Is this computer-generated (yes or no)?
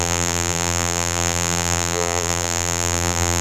yes